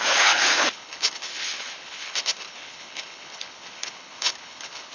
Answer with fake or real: fake